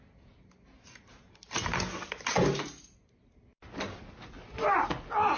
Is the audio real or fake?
real